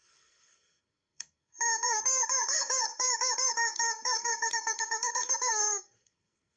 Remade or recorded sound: remade